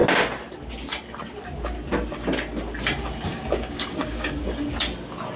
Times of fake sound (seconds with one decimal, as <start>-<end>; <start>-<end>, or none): 3.3-4.7